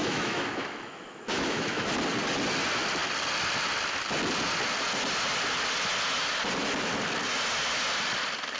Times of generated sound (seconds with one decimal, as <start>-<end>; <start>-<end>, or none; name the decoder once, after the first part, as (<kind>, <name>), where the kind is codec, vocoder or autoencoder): 0.0-1.9 (autoencoder, DAC-VAE)